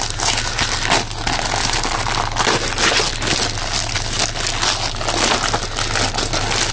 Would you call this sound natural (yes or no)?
yes